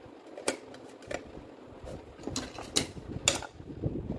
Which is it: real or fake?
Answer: real